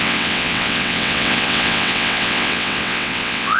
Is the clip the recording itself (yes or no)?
no